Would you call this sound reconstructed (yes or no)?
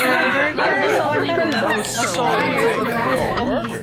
yes